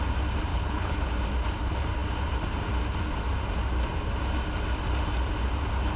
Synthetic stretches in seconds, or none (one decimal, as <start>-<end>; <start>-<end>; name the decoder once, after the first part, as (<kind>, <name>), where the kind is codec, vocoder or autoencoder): 0.5-1.1 (codec, HILCodec)